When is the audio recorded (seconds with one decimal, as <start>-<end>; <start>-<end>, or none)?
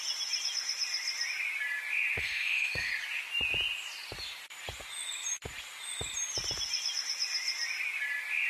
0.0-2.2; 2.9-8.5